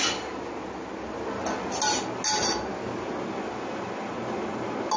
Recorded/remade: recorded